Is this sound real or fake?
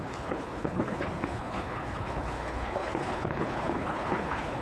fake